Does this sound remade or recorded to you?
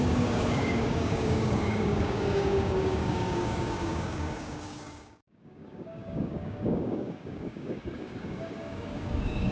remade